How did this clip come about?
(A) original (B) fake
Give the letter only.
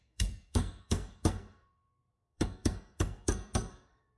B